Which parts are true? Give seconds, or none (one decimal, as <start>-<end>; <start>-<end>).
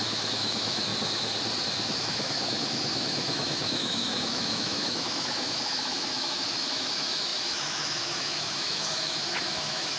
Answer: 0.9-2.0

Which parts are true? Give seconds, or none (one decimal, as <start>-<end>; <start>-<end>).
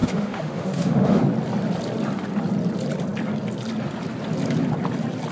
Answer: 1.2-5.3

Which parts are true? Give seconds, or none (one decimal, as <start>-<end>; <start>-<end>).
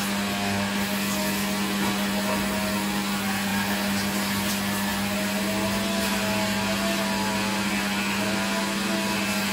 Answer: 0.0-9.5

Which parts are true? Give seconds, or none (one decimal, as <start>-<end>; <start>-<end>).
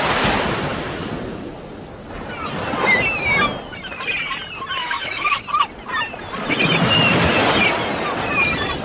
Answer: 0.0-4.8; 5.4-8.8